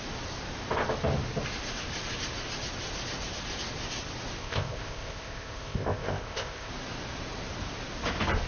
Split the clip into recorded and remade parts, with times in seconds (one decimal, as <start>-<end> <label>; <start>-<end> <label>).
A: 0.0-4.4 recorded; 4.4-6.7 remade; 6.7-8.5 recorded